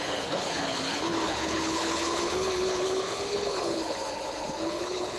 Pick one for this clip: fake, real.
fake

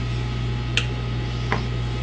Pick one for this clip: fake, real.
real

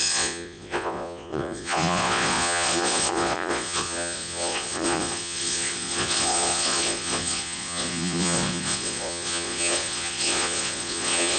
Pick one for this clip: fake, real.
fake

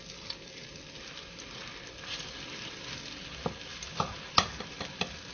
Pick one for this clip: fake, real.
real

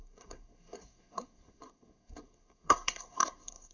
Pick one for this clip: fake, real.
fake